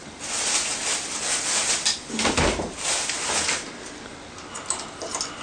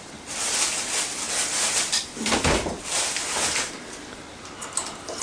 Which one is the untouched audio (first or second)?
first